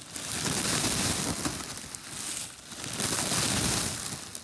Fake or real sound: real